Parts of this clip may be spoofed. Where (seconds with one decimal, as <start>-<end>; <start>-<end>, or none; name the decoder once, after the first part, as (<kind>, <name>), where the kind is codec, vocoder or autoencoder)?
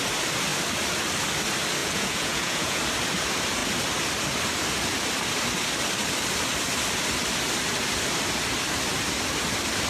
1.8-2.8 (vocoder, Vocos)